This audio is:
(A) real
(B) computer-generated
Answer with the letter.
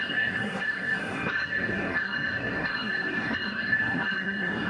B